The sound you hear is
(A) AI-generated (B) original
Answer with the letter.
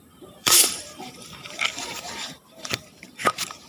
A